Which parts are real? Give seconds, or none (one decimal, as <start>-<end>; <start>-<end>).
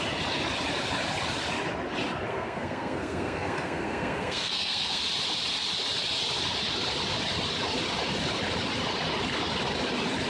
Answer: 0.0-2.3; 5.0-10.3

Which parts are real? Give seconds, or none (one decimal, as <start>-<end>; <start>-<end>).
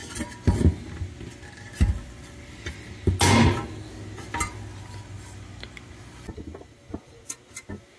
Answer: 0.0-8.0